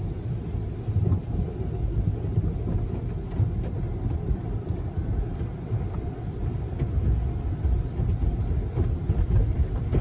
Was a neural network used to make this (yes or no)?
no